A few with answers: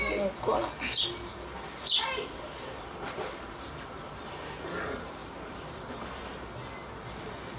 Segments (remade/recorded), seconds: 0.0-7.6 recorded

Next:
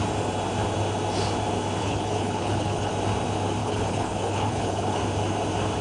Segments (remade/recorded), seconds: 0.0-1.8 recorded; 1.8-2.9 remade; 2.9-3.6 recorded; 3.6-5.0 remade; 5.0-5.8 recorded

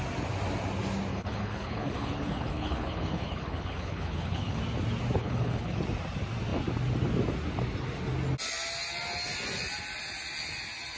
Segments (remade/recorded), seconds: 0.0-1.1 recorded; 1.1-4.6 remade; 4.6-5.2 recorded; 5.2-5.8 remade; 5.8-11.0 recorded

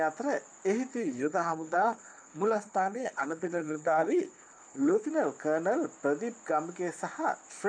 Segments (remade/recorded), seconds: 0.0-0.9 recorded; 0.9-5.1 remade; 5.1-7.7 recorded

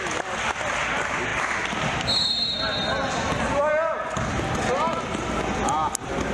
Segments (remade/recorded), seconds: 0.0-6.3 recorded

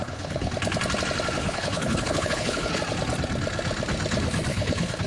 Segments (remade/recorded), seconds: 0.0-0.5 remade; 0.5-1.4 recorded; 1.4-2.8 remade; 2.8-4.5 recorded; 4.5-5.1 remade

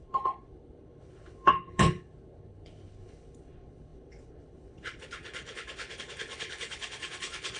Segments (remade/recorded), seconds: 0.0-7.6 remade